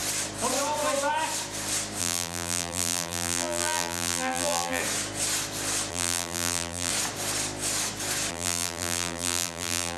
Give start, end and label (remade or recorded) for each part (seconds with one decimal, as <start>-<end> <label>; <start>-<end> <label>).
0.0-2.0 recorded; 2.0-4.8 remade; 4.8-5.9 recorded; 5.9-6.9 remade; 6.9-8.3 recorded; 8.3-10.0 remade